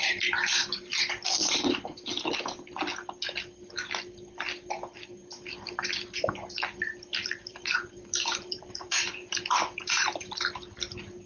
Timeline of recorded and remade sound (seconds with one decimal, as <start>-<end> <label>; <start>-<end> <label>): 0.0-7.2 recorded; 7.2-10.4 remade; 10.4-11.3 recorded